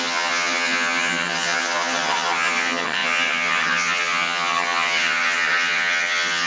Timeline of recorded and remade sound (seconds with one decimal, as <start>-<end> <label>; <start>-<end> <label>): 0.0-6.5 remade

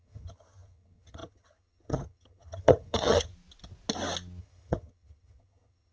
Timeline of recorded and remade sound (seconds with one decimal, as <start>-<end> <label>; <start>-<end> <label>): 0.0-3.3 remade; 3.3-4.4 recorded; 4.4-5.9 remade